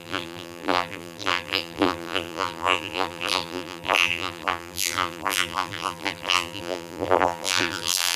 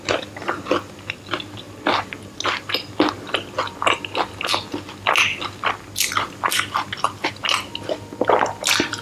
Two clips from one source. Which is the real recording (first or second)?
second